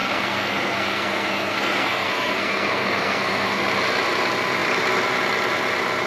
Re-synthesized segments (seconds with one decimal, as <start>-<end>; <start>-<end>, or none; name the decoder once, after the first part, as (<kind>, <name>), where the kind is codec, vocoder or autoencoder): 0.0-3.6 (codec, SNAC)